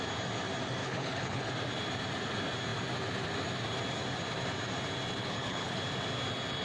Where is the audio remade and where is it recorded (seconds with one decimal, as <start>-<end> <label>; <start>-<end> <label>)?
0.0-0.8 recorded; 0.8-1.5 remade; 1.5-5.2 recorded; 5.2-5.8 remade; 5.8-6.6 recorded

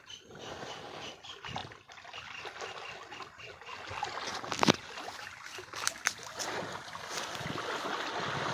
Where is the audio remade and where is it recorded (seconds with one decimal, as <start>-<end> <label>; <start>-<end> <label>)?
0.0-1.6 recorded; 1.6-2.8 remade; 2.8-8.5 recorded

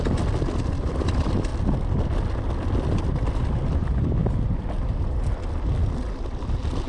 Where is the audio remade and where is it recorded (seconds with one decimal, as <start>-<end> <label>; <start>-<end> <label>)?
0.0-1.5 remade; 1.5-3.0 recorded; 3.0-4.2 remade; 4.2-5.8 recorded; 5.8-6.9 remade

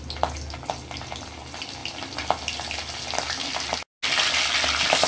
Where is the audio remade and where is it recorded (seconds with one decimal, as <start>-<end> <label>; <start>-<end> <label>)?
0.0-5.1 recorded

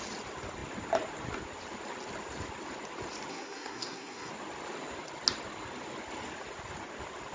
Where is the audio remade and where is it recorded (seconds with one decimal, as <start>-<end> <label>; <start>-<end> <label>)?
0.0-3.3 recorded; 3.3-4.3 remade; 4.3-7.3 recorded